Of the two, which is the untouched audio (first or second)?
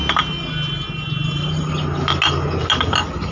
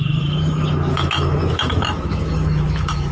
first